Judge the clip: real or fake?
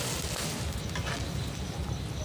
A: real